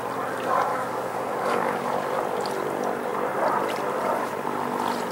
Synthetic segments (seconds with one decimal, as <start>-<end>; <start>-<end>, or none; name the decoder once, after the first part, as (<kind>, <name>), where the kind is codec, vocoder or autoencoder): 0.7-1.8 (codec, DAC)